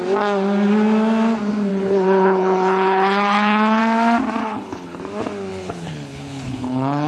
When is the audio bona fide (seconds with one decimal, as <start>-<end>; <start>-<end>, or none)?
0.0-1.7; 3.8-4.4; 5.0-5.5